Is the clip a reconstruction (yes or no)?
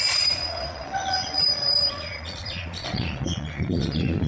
yes